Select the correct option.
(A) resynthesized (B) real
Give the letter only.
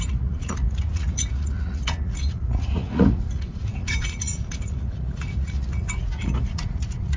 A